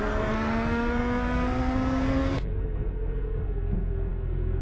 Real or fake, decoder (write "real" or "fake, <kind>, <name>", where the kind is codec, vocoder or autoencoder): fake, codec, SNAC